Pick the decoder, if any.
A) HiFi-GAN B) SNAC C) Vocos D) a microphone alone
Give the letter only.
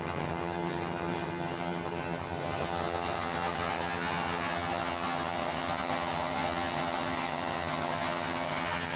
A